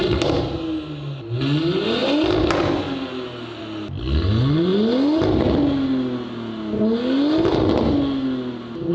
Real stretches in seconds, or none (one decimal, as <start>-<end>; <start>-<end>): 0.0-8.9